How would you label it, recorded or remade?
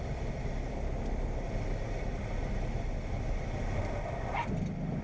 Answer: recorded